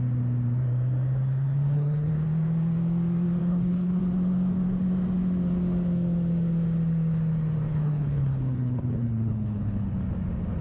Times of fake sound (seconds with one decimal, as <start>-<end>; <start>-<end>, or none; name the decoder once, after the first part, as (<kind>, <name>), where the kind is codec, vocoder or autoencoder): 1.3-2.1 (codec, HILCodec); 3.4-4.0; 7.7-9.8